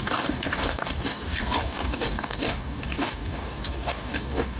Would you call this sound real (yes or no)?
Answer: no